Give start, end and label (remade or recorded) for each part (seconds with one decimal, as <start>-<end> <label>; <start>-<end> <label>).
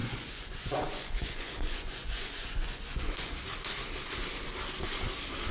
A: 0.0-3.3 remade; 3.3-5.5 recorded